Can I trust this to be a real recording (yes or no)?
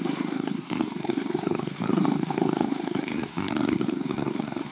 no